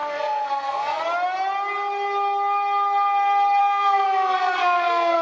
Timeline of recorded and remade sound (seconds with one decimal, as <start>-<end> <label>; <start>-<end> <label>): 0.0-1.0 remade; 1.0-3.6 recorded; 3.6-5.2 remade